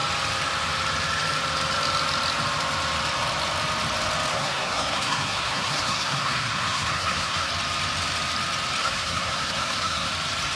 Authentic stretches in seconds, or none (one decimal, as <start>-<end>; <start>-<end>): 0.0-4.3; 7.5-8.8; 10.1-10.6